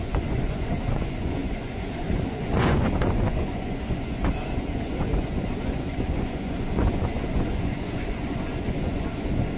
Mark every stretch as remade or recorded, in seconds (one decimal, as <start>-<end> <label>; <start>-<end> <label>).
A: 0.0-9.6 remade